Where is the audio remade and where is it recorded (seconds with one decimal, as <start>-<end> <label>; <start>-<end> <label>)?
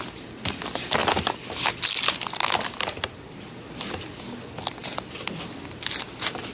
0.0-6.5 recorded